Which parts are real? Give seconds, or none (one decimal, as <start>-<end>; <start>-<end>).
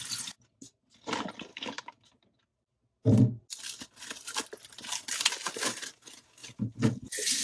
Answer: 0.0-1.5; 2.0-7.4